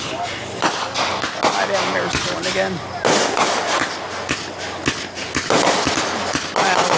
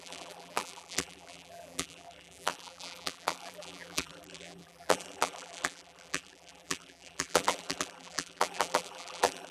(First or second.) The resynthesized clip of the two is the second